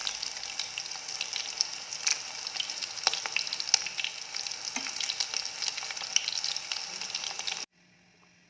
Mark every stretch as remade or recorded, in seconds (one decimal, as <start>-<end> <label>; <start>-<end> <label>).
0.0-8.5 recorded